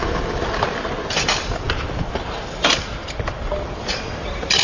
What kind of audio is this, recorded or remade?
recorded